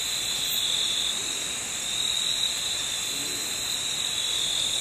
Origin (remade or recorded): recorded